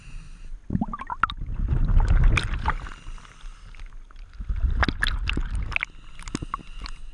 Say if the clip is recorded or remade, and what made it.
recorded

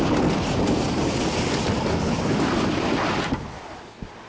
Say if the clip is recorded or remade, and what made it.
recorded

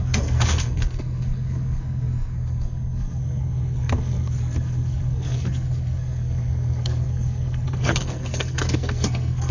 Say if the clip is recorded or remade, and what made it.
remade, codec, SNAC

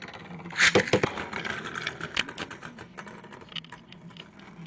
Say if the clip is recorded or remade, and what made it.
recorded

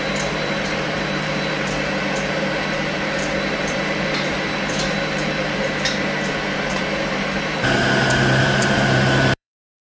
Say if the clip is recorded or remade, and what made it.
remade, vocoder, BigVGAN v2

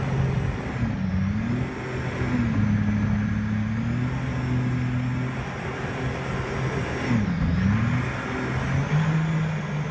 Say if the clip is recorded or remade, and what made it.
recorded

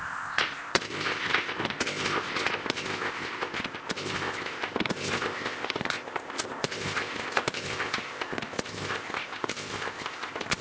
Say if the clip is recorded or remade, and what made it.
remade, codec, ZipCodec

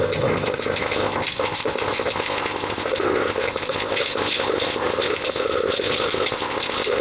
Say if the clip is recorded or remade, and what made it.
remade, codec, ZipCodec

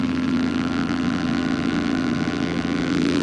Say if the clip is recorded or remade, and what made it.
remade, vocoder, BigVGAN v2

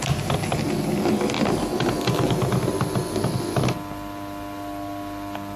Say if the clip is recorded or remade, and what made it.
recorded